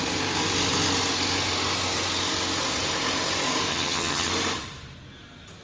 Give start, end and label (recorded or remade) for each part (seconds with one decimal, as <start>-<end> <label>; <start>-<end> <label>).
0.0-3.7 recorded; 3.7-4.3 remade; 4.3-5.6 recorded